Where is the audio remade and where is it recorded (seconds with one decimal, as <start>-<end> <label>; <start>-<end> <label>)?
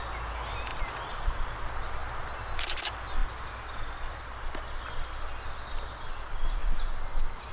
0.0-0.7 recorded; 0.7-1.3 remade; 1.3-7.5 recorded